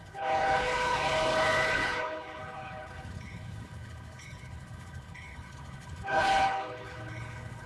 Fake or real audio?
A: fake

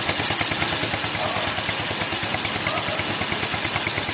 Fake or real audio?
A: real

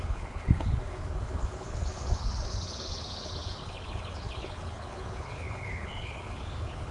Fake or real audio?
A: fake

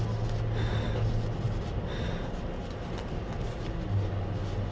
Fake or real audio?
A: real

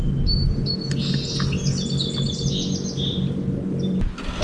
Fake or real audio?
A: real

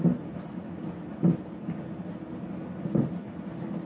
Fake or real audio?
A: real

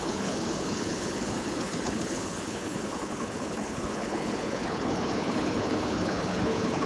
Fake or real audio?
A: fake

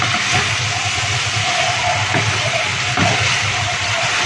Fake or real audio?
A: real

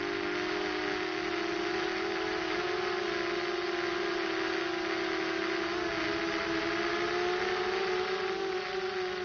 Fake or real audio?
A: real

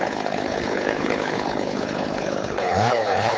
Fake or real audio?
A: fake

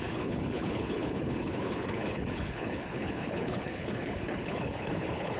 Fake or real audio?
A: fake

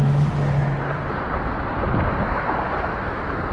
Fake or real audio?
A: real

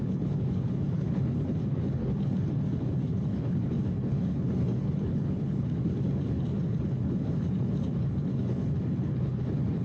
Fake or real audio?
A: fake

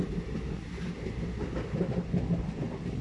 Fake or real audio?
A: real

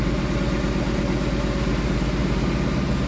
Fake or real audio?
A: real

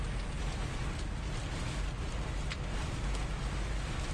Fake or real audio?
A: real